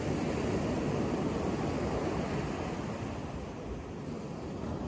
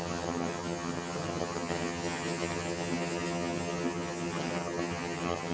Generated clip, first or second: second